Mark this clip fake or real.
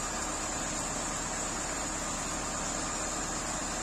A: real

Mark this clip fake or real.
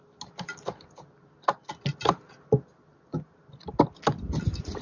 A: real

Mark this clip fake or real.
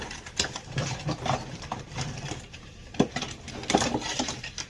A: fake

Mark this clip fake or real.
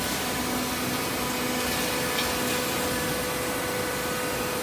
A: real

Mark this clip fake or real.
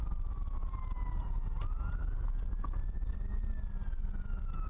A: real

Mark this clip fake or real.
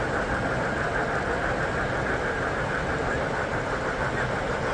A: fake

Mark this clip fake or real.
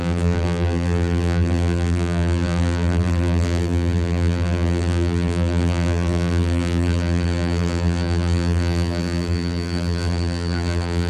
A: fake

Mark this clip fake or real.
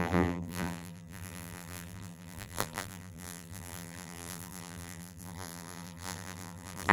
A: fake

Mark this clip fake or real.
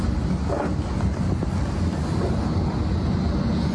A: real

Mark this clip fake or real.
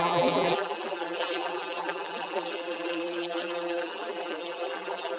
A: fake